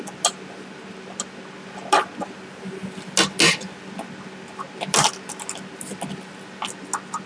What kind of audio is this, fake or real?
real